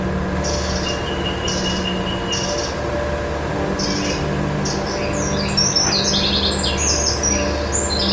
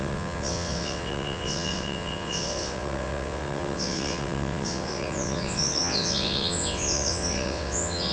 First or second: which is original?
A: first